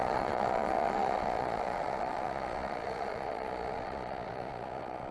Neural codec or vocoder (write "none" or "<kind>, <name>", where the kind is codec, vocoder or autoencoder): vocoder, Vocos